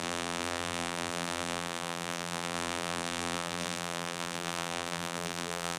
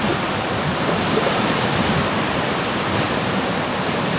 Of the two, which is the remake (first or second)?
first